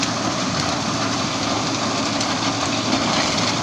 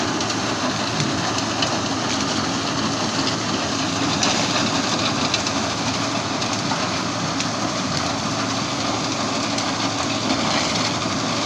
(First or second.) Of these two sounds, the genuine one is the second